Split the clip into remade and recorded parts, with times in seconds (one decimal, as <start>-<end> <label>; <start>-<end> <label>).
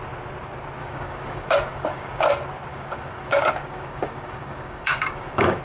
0.0-0.8 recorded; 0.8-2.3 remade; 2.3-2.7 recorded; 2.7-5.6 remade